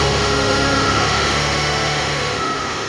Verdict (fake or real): fake